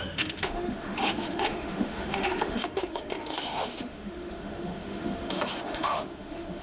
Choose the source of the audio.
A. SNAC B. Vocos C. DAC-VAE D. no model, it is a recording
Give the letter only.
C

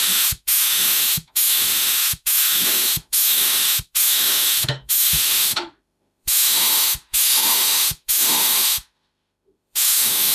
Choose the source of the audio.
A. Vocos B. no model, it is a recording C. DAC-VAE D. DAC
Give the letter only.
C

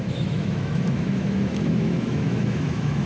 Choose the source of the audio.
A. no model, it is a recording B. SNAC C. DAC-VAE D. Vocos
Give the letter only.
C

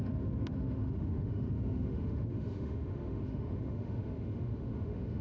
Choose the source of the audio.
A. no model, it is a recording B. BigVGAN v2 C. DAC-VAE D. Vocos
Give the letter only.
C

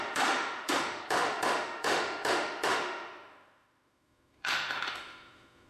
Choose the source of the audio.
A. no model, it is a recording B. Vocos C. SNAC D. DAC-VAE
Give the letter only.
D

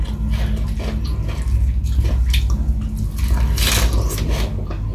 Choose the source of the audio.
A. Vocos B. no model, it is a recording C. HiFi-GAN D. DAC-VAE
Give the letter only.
B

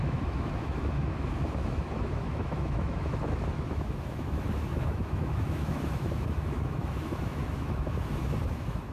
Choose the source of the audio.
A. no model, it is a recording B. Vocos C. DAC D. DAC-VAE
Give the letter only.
D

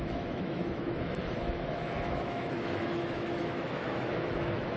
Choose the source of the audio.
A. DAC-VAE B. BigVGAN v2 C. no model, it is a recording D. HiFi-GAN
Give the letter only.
A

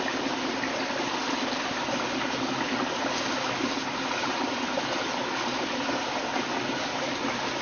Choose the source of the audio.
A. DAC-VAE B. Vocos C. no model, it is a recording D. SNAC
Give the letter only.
C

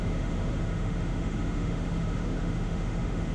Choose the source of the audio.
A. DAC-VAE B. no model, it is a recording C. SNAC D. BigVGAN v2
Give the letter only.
A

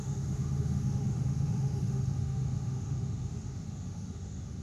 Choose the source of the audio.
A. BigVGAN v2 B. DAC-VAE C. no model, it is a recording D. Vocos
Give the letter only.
B